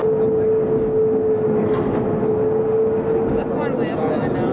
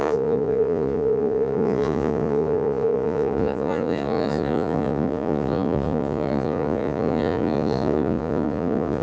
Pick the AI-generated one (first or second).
second